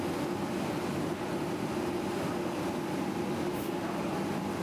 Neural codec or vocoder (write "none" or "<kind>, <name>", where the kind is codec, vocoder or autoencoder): none